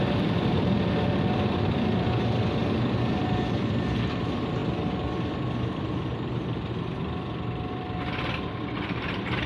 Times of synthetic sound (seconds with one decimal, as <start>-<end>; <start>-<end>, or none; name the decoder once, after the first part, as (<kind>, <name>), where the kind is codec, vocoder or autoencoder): 0.0-2.6 (vocoder, BigVGAN v2); 3.2-9.5